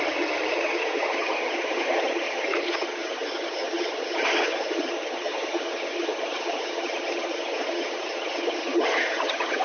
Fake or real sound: fake